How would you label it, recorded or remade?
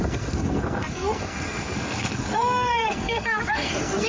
remade